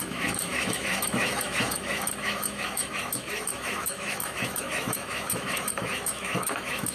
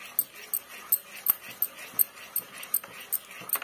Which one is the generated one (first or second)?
first